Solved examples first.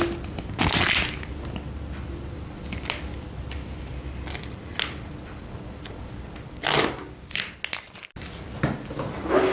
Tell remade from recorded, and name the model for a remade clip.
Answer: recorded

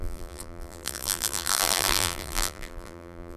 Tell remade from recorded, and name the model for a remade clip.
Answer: remade, vocoder, BigVGAN v2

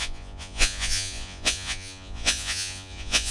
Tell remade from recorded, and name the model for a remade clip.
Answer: remade, vocoder, Vocos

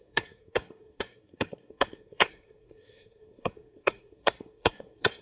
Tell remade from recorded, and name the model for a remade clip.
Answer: remade, codec, SNAC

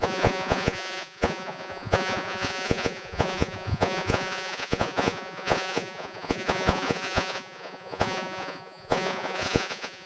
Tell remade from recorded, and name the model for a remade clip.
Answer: remade, vocoder, Vocos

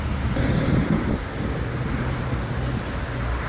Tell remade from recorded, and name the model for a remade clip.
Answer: recorded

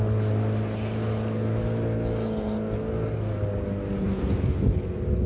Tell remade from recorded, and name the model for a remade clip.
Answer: recorded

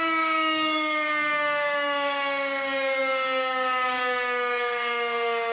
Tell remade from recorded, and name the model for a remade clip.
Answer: remade, codec, DAC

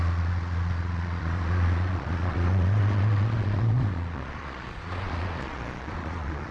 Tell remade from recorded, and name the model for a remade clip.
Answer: remade, vocoder, Vocos